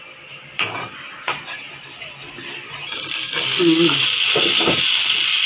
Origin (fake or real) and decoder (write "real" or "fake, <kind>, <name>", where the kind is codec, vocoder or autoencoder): real